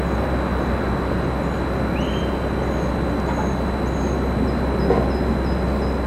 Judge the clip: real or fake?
real